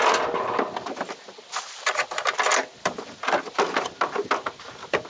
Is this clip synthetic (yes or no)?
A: no